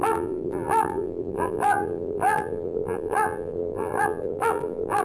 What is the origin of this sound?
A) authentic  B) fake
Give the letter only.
B